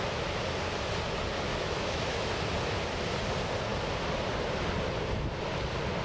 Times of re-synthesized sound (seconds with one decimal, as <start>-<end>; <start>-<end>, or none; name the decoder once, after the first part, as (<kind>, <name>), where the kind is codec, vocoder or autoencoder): 1.5-2.3 (autoencoder, DAC-VAE)